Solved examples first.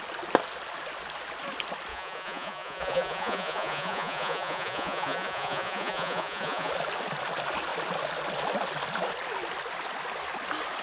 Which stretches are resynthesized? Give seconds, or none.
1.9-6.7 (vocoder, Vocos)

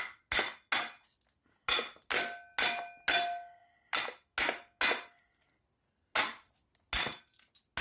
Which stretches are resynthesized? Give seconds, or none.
none

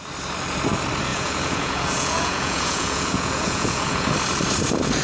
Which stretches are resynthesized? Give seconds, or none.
1.1-4.1 (vocoder, Vocos)

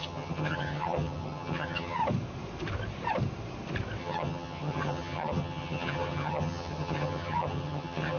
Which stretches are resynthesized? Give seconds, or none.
0.0-2.0 (vocoder, HiFi-GAN); 4.0-8.2